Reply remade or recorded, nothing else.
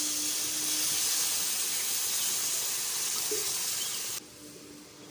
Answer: recorded